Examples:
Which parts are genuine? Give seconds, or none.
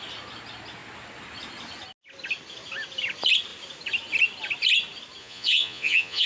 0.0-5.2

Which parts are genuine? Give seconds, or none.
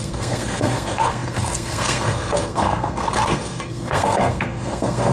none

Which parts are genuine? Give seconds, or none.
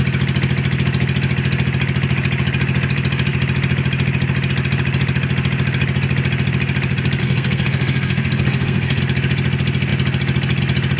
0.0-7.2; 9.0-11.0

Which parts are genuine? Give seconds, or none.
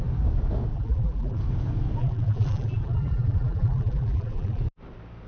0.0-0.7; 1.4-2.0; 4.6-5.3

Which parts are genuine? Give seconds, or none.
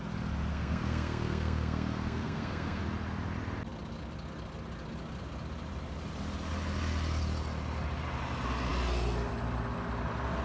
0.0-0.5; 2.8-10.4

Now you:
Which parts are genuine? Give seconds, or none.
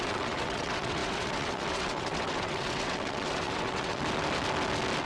4.0-5.0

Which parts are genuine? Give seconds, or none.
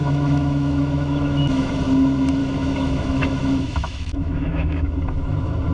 1.7-2.4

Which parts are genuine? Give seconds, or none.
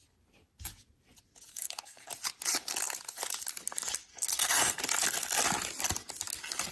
0.0-1.5; 2.1-4.1; 4.8-6.7